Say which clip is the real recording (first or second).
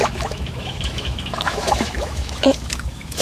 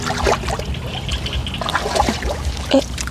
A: second